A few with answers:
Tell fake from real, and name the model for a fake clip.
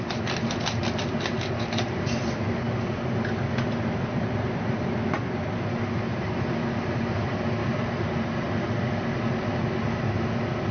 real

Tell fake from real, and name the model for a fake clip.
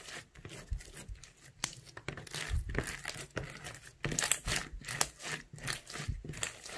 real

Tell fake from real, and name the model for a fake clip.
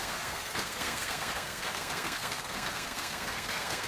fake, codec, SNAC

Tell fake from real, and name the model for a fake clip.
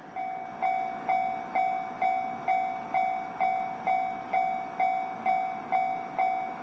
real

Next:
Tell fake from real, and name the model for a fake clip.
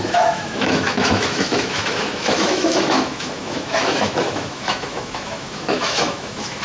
fake, autoencoder, DAC-VAE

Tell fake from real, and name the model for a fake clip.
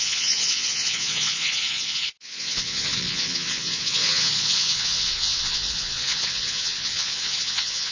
fake, vocoder, Vocos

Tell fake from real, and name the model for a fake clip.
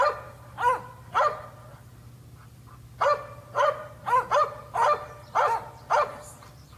real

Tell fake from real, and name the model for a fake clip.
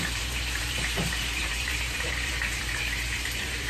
fake, vocoder, BigVGAN v2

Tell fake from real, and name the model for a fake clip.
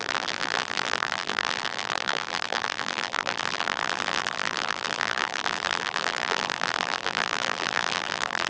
fake, vocoder, BigVGAN v2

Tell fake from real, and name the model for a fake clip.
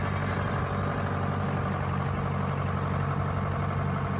real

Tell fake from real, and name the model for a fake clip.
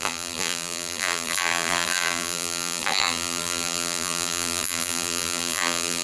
fake, vocoder, BigVGAN v2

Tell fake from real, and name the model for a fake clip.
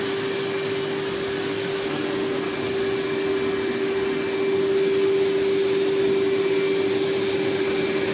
real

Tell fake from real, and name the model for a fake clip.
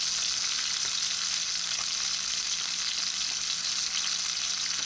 real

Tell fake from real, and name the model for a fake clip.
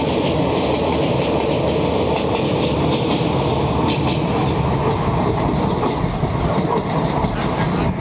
real